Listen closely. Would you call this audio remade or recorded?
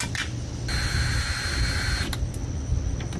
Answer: recorded